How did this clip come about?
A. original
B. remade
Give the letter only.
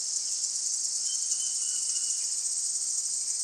A